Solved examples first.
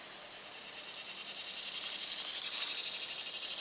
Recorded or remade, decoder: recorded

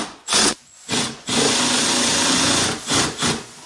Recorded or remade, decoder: remade, vocoder, Vocos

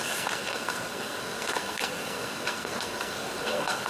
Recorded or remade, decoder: remade, codec, SNAC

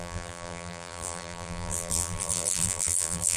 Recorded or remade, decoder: remade, vocoder, BigVGAN v2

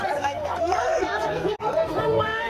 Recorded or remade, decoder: remade, codec, SNAC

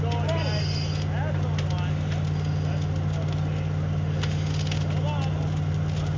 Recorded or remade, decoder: recorded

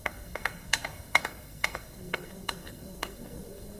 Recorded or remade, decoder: remade, codec, SNAC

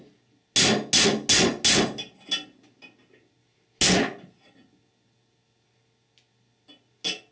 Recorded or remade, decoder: recorded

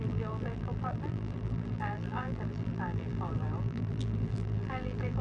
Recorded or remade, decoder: remade, vocoder, BigVGAN v2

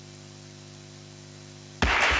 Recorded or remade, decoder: recorded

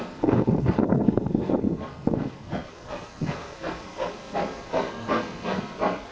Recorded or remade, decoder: remade, codec, SNAC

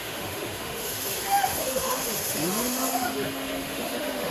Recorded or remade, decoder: remade, autoencoder, DAC-VAE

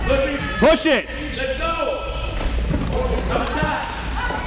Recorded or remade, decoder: recorded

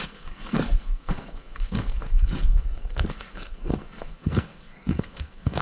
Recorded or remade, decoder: remade, codec, SNAC